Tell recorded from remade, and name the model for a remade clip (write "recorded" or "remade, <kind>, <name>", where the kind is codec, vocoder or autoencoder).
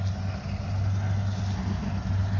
recorded